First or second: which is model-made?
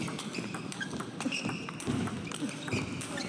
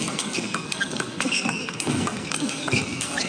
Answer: second